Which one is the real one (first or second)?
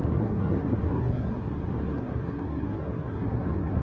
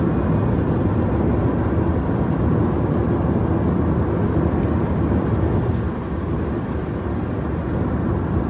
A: second